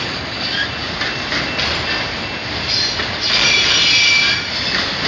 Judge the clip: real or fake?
real